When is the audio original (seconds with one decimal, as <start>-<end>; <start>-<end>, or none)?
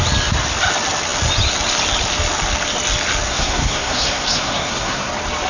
0.0-3.3; 5.1-5.5